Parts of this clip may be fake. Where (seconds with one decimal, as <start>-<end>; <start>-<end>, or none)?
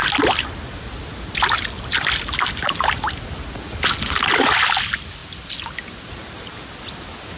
none